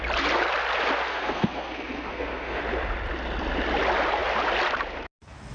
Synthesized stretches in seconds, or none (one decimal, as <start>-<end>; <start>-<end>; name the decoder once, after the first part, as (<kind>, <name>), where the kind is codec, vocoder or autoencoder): 1.1-2.6 (codec, SNAC)